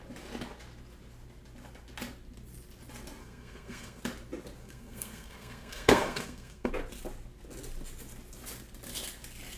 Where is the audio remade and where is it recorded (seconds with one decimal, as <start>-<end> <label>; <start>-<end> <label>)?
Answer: 0.0-3.2 recorded; 3.2-4.0 remade; 4.0-4.6 recorded; 4.6-6.7 remade; 6.7-9.6 recorded